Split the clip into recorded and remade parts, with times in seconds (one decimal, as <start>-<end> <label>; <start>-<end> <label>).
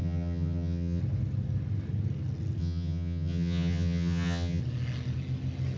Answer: 0.0-1.0 remade; 1.0-2.6 recorded; 2.6-4.6 remade; 4.6-5.8 recorded